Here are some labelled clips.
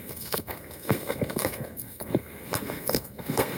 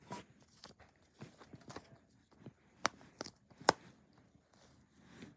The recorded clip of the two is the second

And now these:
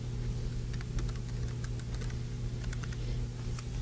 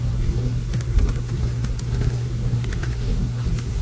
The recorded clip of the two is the first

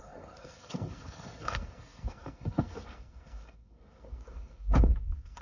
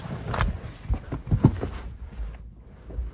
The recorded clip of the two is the second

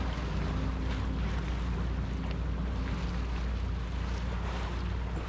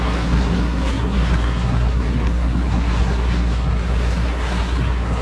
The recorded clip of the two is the first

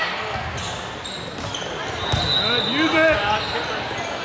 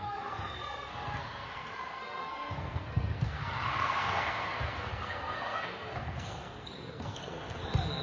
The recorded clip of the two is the first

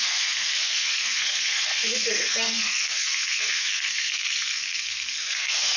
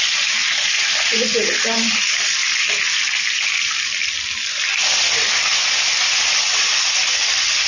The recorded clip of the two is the second